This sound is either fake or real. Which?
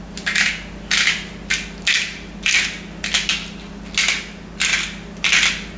real